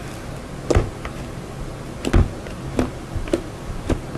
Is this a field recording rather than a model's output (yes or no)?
yes